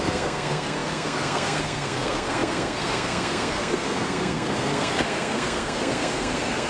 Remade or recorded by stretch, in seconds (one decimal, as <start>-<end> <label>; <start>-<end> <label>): 0.0-6.7 remade